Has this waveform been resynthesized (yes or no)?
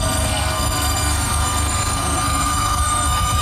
yes